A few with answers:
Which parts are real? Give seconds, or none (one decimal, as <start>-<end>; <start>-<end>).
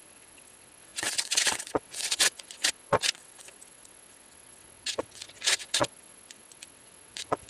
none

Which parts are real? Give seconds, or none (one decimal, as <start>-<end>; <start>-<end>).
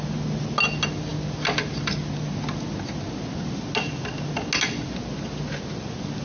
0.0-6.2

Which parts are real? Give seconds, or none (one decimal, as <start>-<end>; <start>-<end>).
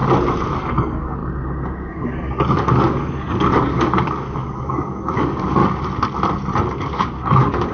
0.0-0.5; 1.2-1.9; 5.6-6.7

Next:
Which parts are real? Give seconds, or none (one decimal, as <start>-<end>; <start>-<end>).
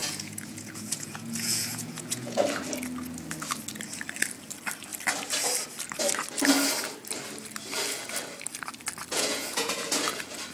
2.4-9.1; 9.9-10.5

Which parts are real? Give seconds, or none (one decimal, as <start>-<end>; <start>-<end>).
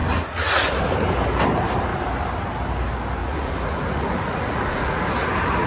0.8-3.2; 5.0-5.7